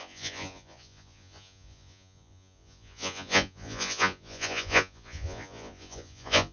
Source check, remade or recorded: remade